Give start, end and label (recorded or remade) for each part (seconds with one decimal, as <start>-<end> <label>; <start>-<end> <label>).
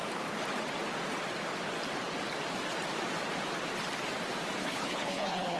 0.0-4.6 recorded; 4.6-5.6 remade